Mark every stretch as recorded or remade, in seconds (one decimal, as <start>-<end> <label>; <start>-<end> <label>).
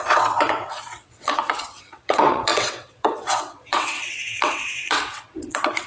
0.0-5.9 remade